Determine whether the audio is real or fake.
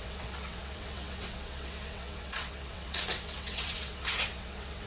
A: fake